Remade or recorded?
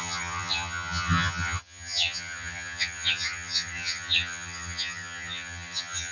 remade